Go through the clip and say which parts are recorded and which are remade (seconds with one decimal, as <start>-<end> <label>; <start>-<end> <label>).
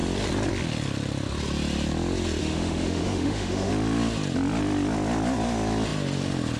0.0-2.4 recorded; 2.4-3.7 remade; 3.7-6.6 recorded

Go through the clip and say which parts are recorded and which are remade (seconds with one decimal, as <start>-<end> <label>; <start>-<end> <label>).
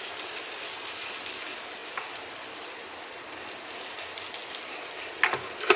0.0-5.8 recorded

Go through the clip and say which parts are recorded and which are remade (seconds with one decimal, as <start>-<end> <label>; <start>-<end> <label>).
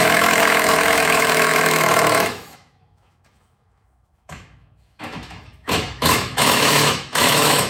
0.0-7.7 remade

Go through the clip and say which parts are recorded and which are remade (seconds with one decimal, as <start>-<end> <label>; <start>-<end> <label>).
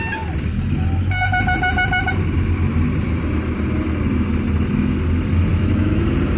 0.0-5.5 recorded; 5.5-6.0 remade; 6.0-6.4 recorded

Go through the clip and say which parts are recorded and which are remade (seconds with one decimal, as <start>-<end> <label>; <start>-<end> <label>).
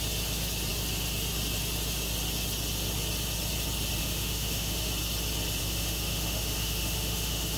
0.0-4.0 recorded; 4.0-4.9 remade; 4.9-5.6 recorded; 5.6-7.6 remade